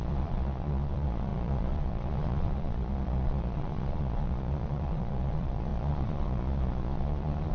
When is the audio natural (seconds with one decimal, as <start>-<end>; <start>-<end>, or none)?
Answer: none